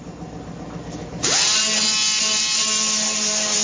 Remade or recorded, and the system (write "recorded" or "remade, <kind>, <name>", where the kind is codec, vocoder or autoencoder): recorded